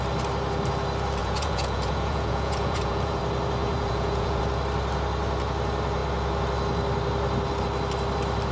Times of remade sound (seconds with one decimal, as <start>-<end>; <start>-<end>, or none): 1.2-3.2; 3.6-4.4